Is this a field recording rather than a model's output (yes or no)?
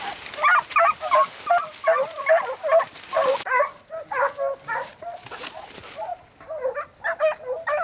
yes